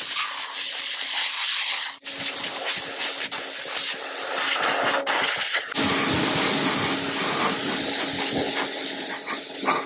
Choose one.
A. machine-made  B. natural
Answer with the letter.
B